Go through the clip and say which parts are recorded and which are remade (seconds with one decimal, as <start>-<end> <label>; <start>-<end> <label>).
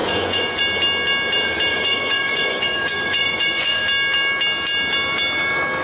0.0-0.6 remade; 0.6-1.7 recorded; 1.7-3.8 remade; 3.8-5.8 recorded